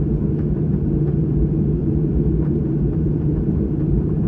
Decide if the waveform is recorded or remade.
remade